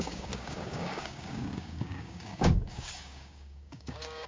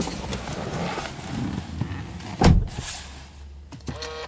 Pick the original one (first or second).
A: second